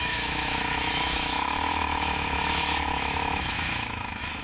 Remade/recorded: remade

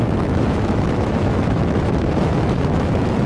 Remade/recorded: remade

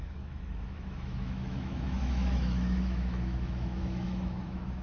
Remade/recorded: remade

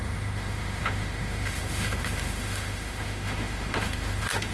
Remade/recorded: remade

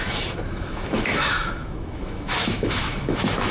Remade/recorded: remade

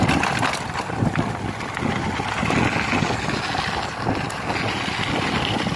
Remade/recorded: recorded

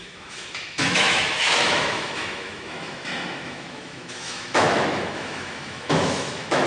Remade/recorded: remade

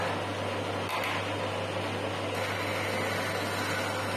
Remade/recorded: recorded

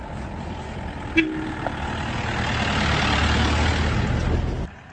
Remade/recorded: recorded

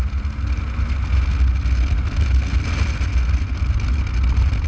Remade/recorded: recorded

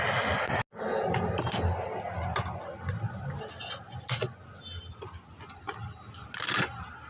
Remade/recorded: recorded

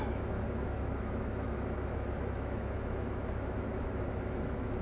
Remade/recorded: remade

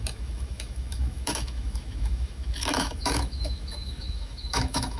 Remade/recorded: remade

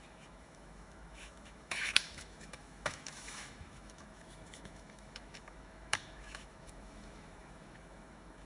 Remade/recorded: remade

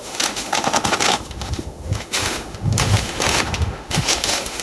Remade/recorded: remade